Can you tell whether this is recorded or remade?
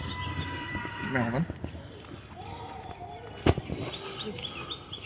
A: recorded